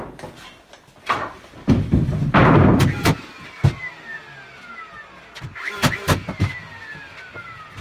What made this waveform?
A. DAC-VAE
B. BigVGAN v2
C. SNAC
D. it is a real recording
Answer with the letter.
B